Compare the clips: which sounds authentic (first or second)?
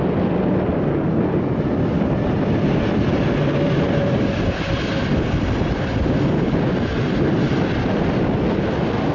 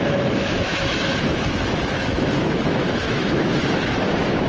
first